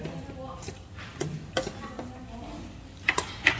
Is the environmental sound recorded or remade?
recorded